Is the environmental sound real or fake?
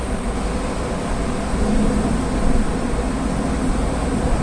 fake